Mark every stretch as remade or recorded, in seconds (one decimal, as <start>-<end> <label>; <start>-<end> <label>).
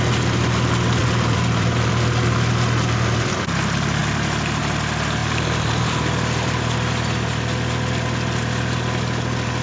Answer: 0.0-1.0 recorded; 1.0-1.9 remade; 1.9-5.2 recorded; 5.2-6.1 remade; 6.1-9.6 recorded